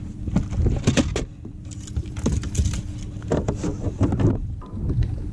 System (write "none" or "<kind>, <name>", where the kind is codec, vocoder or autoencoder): none